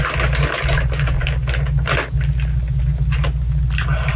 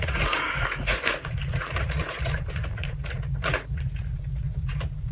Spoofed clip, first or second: second